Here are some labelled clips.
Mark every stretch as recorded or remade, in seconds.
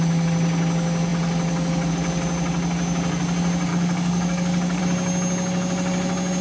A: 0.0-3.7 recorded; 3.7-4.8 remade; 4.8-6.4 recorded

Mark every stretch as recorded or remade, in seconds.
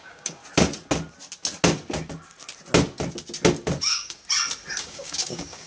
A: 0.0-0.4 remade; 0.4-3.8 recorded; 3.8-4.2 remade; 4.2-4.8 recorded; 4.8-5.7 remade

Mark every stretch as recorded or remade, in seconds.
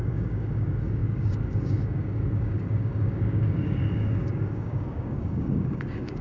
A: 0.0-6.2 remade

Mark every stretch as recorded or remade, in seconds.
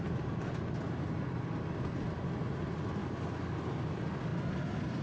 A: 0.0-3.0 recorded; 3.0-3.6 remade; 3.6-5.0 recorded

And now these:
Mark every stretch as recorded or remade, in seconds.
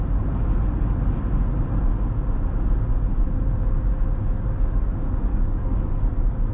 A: 0.0-5.3 recorded; 5.3-6.0 remade; 6.0-6.5 recorded